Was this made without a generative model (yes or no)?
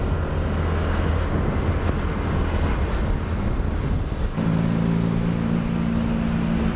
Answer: yes